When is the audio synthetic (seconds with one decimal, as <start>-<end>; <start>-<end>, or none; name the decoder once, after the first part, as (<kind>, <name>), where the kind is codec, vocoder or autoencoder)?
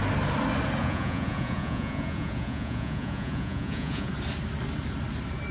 0.8-4.1 (vocoder, Vocos)